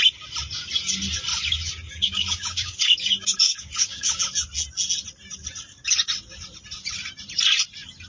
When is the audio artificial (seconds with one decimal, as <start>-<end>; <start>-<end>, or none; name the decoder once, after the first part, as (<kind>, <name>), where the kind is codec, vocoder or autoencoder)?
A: 1.3-4.2 (codec, DAC)